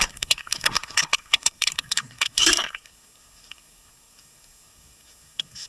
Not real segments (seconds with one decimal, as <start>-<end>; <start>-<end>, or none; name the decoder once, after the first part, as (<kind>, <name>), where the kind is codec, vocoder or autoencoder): 0.0-5.7 (codec, SNAC)